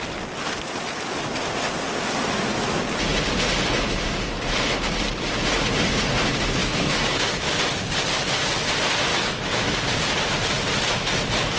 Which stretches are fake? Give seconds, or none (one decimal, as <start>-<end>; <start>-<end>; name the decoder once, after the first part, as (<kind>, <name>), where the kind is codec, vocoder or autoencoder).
6.6-7.5 (autoencoder, DAC-VAE); 9.1-9.8

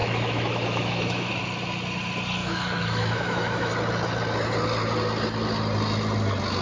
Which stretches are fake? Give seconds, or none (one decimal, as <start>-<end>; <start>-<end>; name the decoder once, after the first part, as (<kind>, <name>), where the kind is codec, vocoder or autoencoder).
0.0-1.3 (autoencoder, DAC-VAE); 2.4-3.7

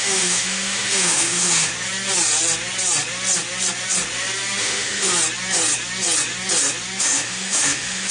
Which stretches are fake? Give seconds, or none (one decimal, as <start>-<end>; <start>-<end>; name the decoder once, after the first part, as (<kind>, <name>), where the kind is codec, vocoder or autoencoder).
0.0-1.7 (autoencoder, DAC-VAE); 4.6-5.1; 7.0-8.1

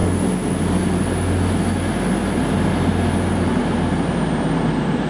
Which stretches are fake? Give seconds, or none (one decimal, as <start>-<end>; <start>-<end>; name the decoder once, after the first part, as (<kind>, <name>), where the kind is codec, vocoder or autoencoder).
none

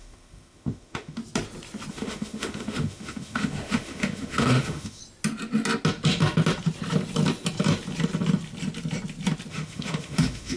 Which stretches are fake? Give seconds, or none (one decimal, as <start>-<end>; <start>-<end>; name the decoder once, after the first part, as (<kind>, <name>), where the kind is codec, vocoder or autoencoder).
0.0-1.2 (autoencoder, DAC-VAE); 1.9-5.0; 9.5-10.6

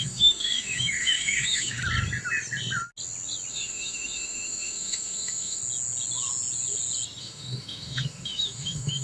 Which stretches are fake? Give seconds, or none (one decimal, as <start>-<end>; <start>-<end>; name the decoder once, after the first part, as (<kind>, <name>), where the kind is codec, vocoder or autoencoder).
0.0-1.8 (autoencoder, DAC-VAE); 3.5-5.6; 7.2-9.0

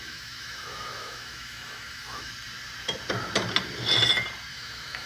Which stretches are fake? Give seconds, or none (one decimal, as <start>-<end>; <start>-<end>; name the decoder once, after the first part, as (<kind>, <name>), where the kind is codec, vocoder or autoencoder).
0.0-2.3 (autoencoder, DAC-VAE); 4.5-5.1